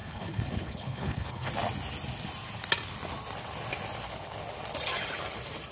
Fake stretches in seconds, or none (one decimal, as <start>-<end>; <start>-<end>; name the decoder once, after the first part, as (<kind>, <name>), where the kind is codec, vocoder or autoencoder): 0.0-1.5 (codec, HILCodec)

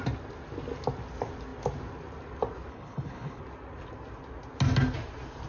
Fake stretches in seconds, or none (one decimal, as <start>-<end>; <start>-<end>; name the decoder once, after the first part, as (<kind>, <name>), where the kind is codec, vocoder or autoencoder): 2.7-3.4 (codec, HILCodec)

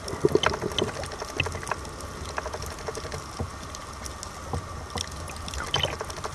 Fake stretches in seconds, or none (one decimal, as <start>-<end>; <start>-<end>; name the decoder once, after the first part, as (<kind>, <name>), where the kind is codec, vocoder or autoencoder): none

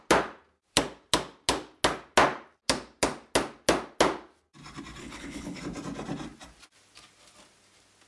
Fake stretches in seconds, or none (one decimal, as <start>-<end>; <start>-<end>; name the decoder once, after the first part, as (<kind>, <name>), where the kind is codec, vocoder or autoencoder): 5.0-5.6 (codec, HILCodec)

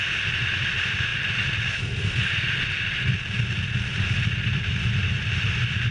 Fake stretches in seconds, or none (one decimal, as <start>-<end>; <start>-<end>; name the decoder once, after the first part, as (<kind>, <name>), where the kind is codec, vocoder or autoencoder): none

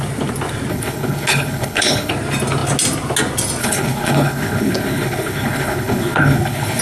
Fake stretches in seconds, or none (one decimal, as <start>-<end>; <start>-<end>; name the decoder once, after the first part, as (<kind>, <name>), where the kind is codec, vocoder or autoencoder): 0.7-2.1 (codec, HILCodec); 3.6-6.8

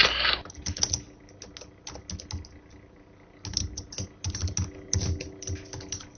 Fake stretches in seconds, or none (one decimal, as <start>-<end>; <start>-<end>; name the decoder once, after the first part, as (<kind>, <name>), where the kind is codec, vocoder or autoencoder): none